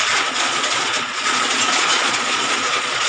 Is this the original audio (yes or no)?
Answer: no